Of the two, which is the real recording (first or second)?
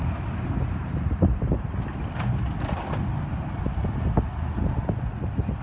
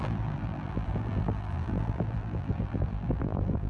first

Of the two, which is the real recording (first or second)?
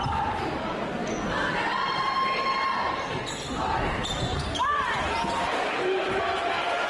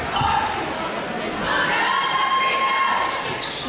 second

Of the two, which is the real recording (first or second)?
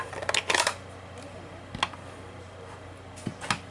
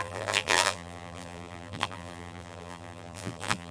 first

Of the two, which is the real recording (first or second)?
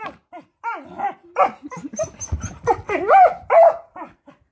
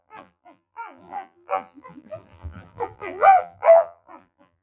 first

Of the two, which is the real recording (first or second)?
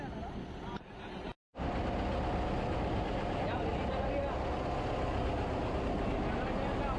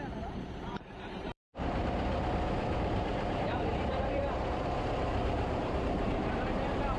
first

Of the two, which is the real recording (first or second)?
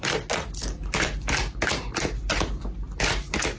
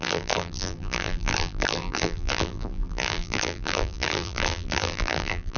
first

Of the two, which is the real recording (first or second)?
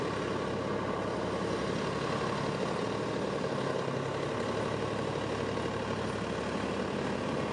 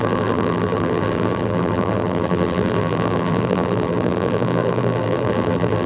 first